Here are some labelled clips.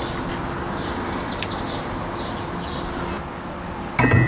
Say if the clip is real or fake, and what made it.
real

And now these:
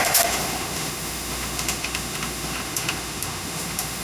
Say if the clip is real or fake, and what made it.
fake, autoencoder, DAC-VAE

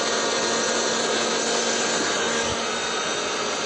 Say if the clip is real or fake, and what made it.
real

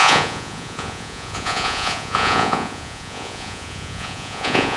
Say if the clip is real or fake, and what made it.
fake, vocoder, Vocos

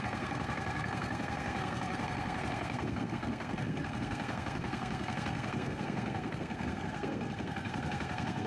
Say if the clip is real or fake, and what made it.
fake, codec, SNAC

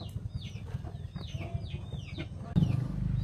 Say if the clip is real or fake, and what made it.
real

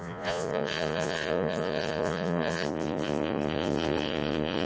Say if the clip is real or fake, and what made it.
fake, vocoder, Vocos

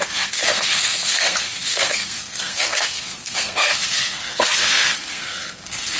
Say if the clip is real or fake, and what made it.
fake, codec, SNAC